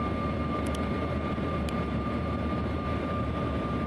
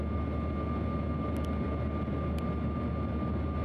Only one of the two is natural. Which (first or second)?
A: second